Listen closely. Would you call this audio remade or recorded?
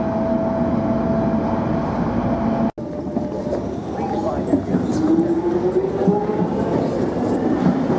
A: recorded